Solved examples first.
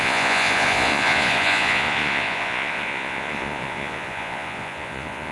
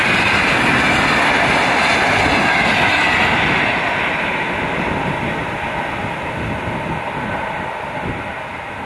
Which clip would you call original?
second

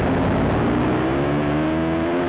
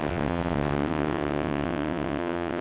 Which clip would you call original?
first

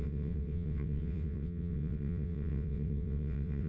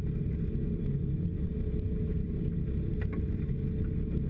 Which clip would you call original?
second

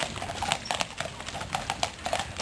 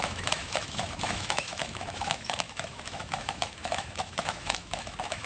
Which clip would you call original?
first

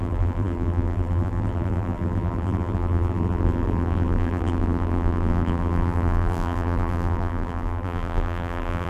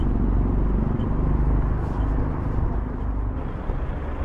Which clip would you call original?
second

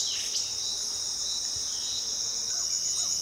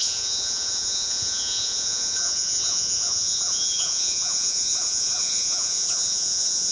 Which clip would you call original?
first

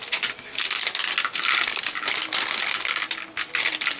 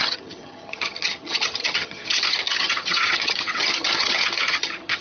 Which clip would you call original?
first